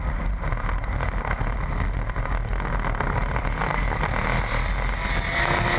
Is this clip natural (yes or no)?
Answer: yes